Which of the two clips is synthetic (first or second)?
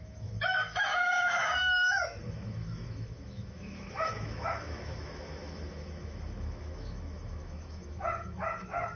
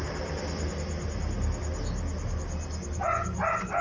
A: first